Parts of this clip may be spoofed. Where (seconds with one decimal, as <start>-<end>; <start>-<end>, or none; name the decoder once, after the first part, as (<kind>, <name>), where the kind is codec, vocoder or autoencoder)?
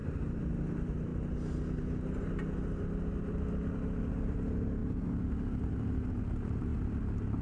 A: 0.0-1.1 (vocoder, BigVGAN v2); 4.0-6.7